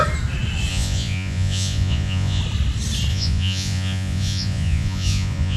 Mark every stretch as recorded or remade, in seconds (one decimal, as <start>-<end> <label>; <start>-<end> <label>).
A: 0.0-0.7 recorded; 0.7-2.4 remade; 2.4-3.1 recorded; 3.1-5.6 remade

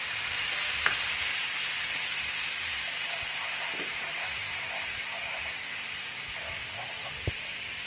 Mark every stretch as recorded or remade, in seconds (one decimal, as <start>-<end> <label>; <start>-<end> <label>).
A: 0.0-7.9 recorded

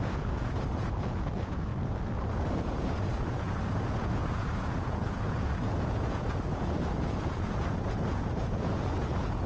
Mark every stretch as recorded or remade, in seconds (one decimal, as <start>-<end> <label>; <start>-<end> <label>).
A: 0.0-1.7 remade; 1.7-2.5 recorded; 2.5-9.5 remade

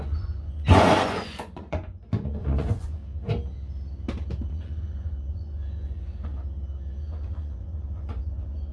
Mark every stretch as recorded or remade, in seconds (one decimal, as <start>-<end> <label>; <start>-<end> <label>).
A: 0.0-3.0 remade; 3.0-4.5 recorded; 4.5-6.3 remade; 6.3-7.0 recorded; 7.0-8.7 remade

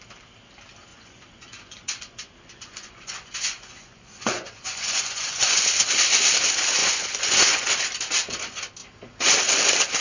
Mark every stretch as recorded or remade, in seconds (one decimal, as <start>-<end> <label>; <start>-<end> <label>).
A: 0.0-0.9 recorded; 0.9-5.6 remade; 5.6-6.8 recorded; 6.8-7.7 remade; 7.7-10.0 recorded